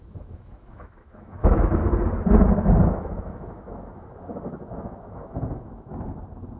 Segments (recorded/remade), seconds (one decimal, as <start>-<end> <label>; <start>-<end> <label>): 0.0-1.8 remade; 1.8-2.9 recorded; 2.9-5.9 remade; 5.9-6.6 recorded